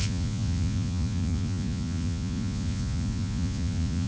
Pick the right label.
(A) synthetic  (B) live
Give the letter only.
A